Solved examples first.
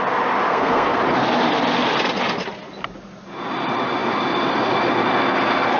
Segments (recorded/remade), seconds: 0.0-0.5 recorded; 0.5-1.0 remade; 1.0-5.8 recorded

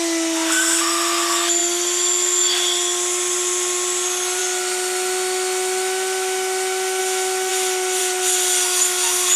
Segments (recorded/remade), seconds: 0.0-9.4 recorded

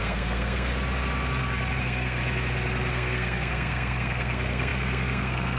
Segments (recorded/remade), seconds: 0.0-0.7 remade; 0.7-1.8 recorded; 1.8-2.2 remade; 2.2-2.9 recorded; 2.9-5.6 remade

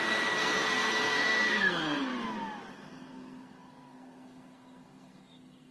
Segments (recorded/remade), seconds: 0.0-2.1 remade; 2.1-2.7 recorded; 2.7-5.7 remade

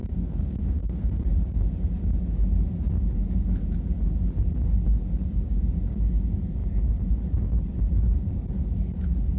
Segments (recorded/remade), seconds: 0.0-1.2 remade; 1.2-9.4 recorded